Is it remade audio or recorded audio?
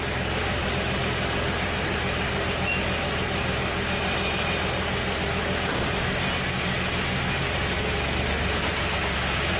recorded